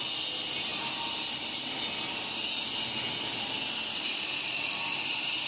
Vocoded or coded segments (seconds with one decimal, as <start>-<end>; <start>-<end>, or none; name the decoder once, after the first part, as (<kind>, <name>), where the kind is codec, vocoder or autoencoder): none